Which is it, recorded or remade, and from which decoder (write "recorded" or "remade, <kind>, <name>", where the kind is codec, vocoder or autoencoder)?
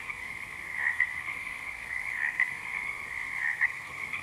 remade, codec, SNAC